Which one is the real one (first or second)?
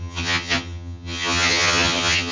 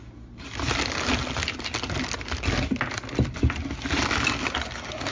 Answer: second